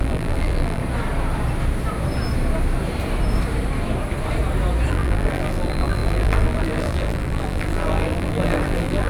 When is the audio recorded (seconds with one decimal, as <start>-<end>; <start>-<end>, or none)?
0.8-4.9